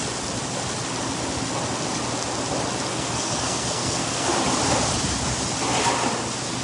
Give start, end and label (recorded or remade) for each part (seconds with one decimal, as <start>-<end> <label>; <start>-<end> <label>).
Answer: 0.0-2.9 recorded; 2.9-4.3 remade; 4.3-6.6 recorded